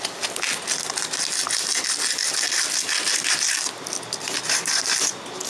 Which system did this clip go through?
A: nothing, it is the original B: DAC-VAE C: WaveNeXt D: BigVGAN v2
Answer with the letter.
A